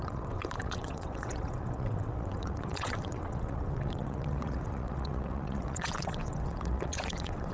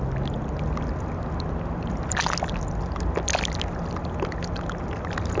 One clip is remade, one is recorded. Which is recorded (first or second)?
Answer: second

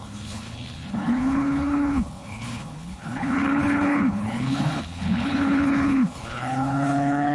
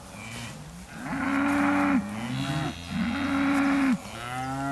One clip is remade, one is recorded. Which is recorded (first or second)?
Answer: second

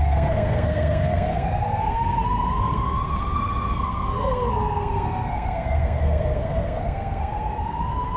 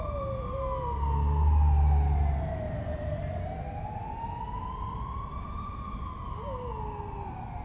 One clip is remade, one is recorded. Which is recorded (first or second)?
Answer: second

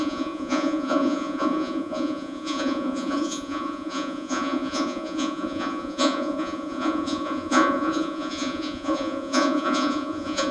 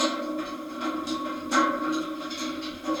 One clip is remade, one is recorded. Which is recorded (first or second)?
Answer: second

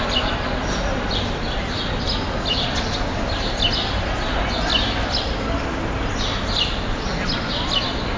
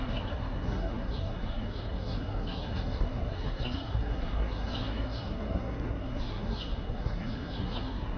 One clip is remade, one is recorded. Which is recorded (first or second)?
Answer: first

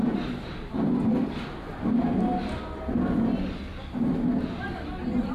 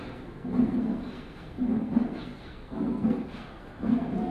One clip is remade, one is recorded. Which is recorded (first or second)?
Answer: first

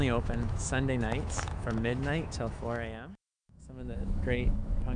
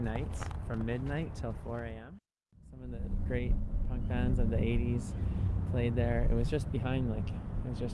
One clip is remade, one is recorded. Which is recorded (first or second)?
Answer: second